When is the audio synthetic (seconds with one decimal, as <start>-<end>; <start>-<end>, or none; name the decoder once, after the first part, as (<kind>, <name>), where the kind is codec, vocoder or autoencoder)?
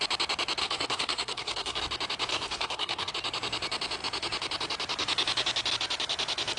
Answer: 0.6-1.8 (codec, SNAC); 2.3-3.1